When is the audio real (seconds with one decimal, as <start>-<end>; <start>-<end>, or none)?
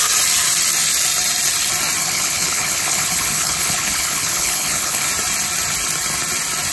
0.0-2.0; 5.1-6.7